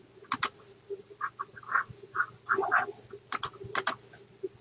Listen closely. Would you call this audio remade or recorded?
recorded